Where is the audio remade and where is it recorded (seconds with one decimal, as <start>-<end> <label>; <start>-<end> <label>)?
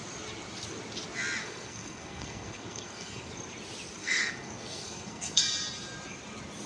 0.0-1.4 recorded; 1.4-3.3 remade; 3.3-4.0 recorded; 4.0-5.4 remade; 5.4-6.7 recorded